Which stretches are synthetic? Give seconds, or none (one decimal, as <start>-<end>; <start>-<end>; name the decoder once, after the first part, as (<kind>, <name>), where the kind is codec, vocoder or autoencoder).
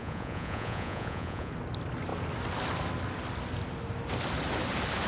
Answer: 0.0-1.5 (vocoder, Vocos)